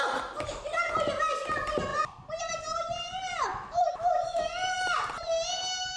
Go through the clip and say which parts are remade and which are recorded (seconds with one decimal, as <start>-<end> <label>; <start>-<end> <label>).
0.0-3.5 recorded; 3.5-4.4 remade; 4.4-6.0 recorded